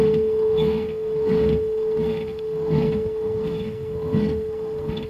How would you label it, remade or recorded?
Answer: remade